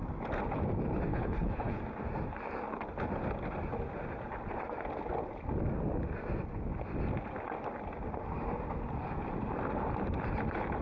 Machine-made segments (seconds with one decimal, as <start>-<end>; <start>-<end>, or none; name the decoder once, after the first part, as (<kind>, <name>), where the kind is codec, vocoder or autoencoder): 1.1-1.8 (codec, HILCodec)